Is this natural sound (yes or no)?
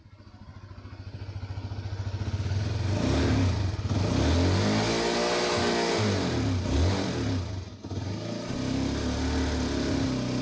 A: yes